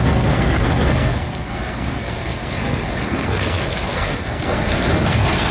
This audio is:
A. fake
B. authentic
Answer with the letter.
A